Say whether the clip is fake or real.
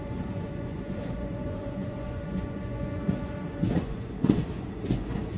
fake